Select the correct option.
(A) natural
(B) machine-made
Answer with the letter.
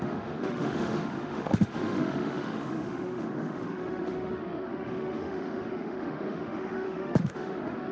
B